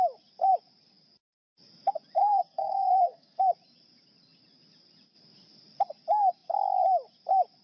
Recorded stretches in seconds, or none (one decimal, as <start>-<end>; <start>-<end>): 0.0-2.2; 3.4-7.6